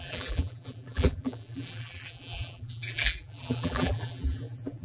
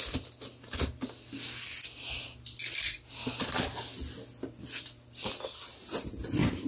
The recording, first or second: second